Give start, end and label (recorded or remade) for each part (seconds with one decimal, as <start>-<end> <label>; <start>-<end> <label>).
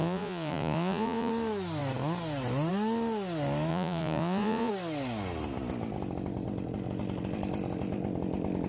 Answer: 0.0-1.3 remade; 1.3-3.7 recorded; 3.7-4.7 remade; 4.7-8.7 recorded